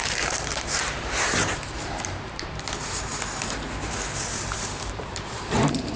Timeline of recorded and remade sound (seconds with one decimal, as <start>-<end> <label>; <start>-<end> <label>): 0.0-3.1 remade; 3.1-4.8 recorded; 4.8-6.0 remade